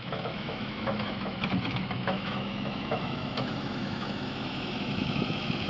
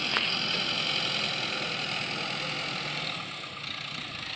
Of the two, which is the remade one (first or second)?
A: first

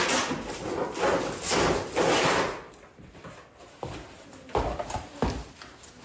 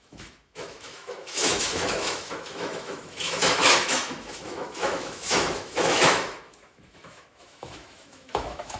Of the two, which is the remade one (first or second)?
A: second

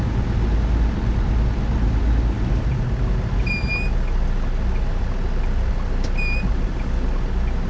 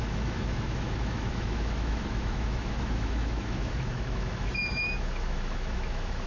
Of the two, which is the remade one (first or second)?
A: second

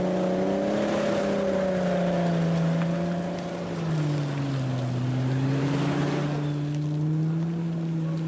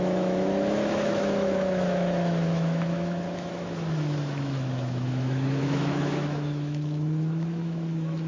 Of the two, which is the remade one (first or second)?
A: second